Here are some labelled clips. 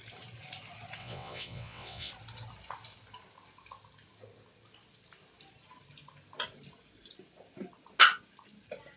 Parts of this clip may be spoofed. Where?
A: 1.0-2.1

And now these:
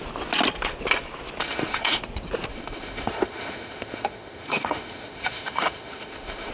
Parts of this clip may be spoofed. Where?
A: 1.4-2.0; 2.5-6.5

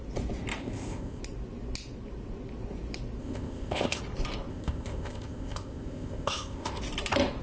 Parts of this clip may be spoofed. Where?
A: 0.6-1.2; 3.2-4.0; 4.5-6.8

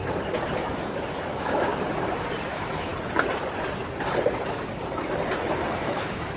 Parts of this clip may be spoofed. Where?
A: 0.6-1.7; 2.5-2.9; 5.8-6.4

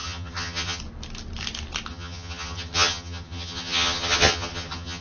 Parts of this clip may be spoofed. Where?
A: 0.0-0.8; 1.9-5.0

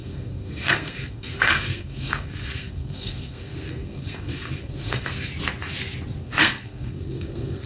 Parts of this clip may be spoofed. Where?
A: 0.0-5.3; 6.2-7.7

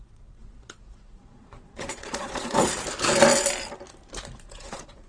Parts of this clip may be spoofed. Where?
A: 0.0-2.7; 4.5-5.1